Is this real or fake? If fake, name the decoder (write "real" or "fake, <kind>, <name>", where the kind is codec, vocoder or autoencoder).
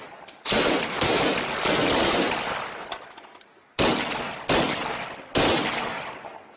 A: real